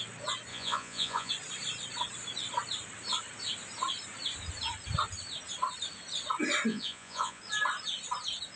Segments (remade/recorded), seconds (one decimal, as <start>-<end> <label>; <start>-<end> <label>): 0.0-0.5 recorded; 0.5-1.3 remade; 1.3-6.7 recorded; 6.7-7.4 remade; 7.4-8.6 recorded